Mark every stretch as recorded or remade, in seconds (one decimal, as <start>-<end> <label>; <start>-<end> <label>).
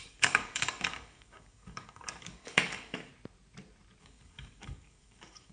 0.0-3.1 remade; 3.1-4.0 recorded; 4.0-5.5 remade